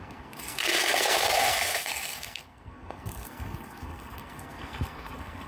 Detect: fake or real fake